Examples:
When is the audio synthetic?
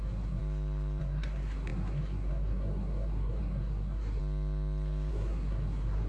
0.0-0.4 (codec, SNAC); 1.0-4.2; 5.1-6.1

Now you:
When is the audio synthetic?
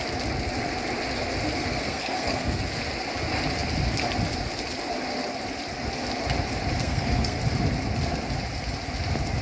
1.6-2.6 (codec, SNAC); 6.8-7.4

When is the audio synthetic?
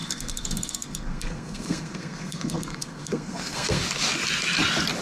0.0-3.8 (codec, SNAC)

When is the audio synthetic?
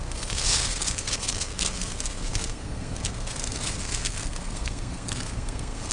0.0-5.9 (codec, SNAC)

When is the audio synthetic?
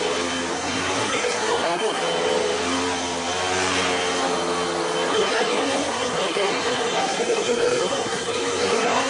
0.5-2.0 (codec, SNAC); 5.1-9.1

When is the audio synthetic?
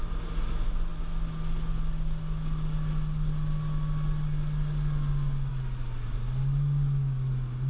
none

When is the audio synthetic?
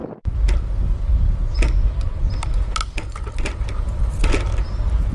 none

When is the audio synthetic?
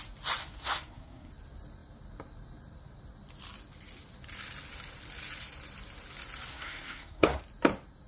0.4-1.3 (codec, SNAC); 6.5-7.4